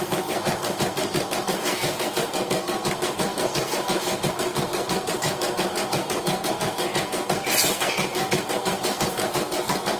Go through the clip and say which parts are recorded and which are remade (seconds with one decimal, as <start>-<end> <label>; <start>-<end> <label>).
0.0-10.0 remade